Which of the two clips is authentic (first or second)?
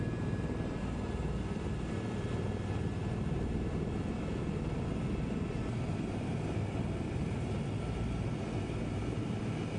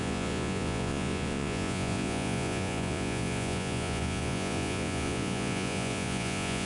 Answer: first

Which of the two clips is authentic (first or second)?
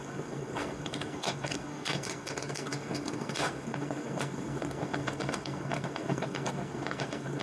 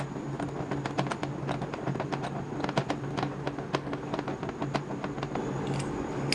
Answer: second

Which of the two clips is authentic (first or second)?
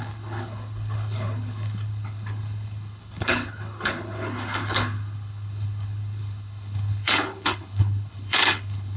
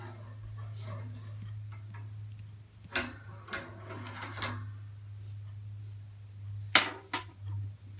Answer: second